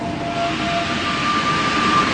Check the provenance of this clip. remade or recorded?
recorded